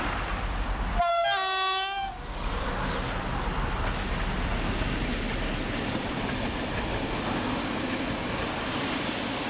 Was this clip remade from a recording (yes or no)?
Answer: no